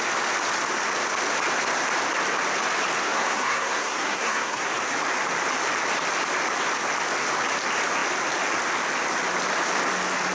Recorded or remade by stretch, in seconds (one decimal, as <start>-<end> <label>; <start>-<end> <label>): 0.0-3.0 recorded; 3.0-4.7 remade; 4.7-10.3 recorded